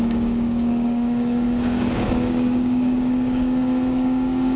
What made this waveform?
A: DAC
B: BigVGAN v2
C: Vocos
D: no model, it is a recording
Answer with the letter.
A